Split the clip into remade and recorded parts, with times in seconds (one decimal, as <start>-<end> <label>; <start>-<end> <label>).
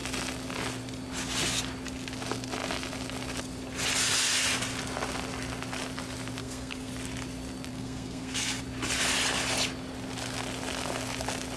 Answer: 0.0-6.4 recorded; 6.4-6.9 remade; 6.9-7.7 recorded; 7.7-8.6 remade; 8.6-11.6 recorded